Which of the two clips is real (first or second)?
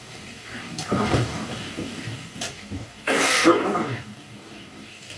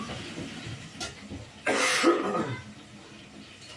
second